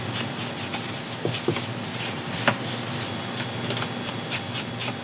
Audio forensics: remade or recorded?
recorded